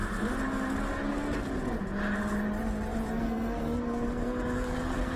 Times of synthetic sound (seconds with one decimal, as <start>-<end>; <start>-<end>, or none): 3.1-5.2